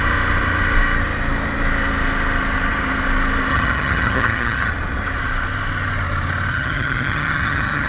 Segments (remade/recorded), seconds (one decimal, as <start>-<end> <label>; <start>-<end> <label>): 0.0-3.5 recorded; 3.5-4.7 remade; 4.7-6.5 recorded; 6.5-7.9 remade